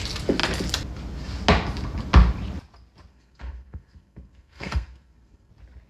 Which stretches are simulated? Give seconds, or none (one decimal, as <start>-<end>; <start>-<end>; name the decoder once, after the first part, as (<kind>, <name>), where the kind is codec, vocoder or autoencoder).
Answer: 3.1-5.5 (codec, SNAC)